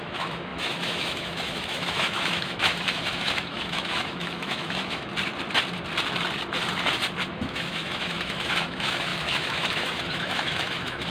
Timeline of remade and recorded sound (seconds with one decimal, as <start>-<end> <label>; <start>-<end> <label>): 0.0-5.1 remade; 5.1-7.3 recorded; 7.3-11.1 remade